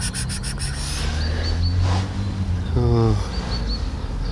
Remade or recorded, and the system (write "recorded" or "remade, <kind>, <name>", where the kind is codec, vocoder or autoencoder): recorded